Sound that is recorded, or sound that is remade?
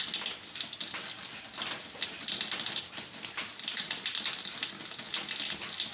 recorded